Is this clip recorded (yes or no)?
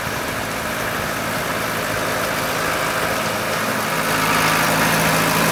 yes